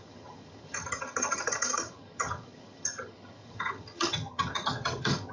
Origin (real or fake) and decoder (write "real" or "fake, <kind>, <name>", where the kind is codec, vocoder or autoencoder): fake, vocoder, HiFi-GAN